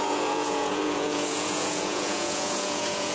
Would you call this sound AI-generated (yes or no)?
yes